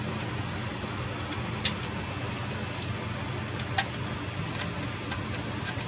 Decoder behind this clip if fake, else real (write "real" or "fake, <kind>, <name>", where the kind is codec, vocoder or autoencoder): real